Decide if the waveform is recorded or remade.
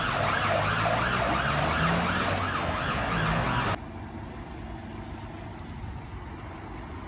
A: recorded